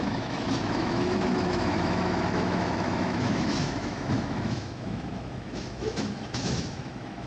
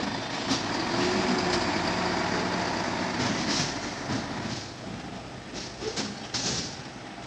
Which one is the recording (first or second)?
second